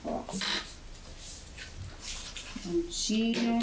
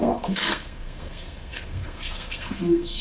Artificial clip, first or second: second